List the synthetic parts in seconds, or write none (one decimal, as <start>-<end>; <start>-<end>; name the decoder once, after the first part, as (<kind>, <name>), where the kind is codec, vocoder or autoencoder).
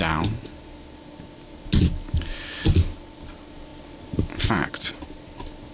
none